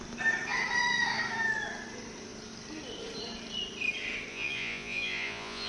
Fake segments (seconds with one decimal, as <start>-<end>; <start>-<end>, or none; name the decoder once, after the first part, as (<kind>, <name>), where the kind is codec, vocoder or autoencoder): 4.3-5.7 (vocoder, Vocos)